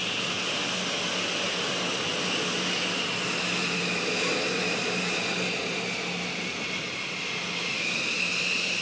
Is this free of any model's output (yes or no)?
yes